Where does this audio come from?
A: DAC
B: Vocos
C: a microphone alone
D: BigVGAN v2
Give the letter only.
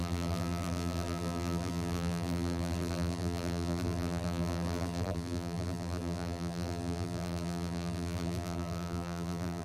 D